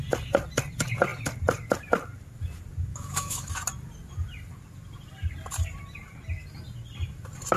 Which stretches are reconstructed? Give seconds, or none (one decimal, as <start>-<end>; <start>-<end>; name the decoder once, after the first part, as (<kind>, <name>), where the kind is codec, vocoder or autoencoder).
2.9-3.5 (autoencoder, DAC-VAE)